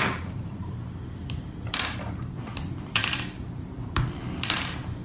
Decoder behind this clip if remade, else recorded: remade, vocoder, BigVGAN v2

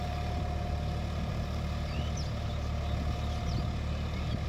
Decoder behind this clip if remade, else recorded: recorded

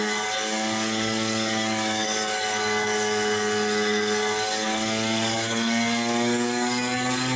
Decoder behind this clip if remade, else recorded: remade, codec, DAC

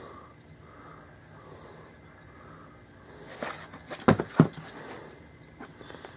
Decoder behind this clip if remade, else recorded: recorded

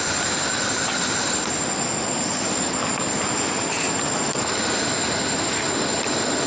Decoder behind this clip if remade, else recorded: recorded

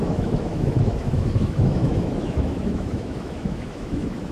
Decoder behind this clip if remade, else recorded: remade, autoencoder, DAC-VAE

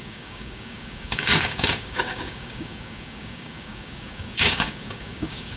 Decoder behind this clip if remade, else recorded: remade, codec, DAC